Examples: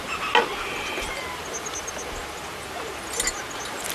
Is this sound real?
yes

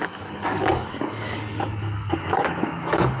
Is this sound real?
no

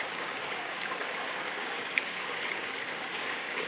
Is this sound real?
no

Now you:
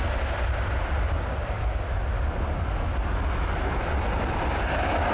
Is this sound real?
yes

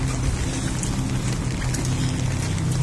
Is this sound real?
yes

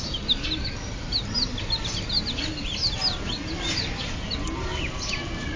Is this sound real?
yes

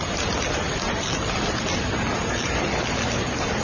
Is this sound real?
yes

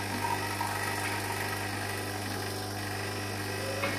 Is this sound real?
yes